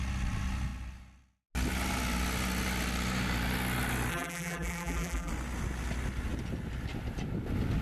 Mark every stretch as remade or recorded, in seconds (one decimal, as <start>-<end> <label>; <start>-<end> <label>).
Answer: 0.0-4.1 recorded; 4.1-5.3 remade; 5.3-7.8 recorded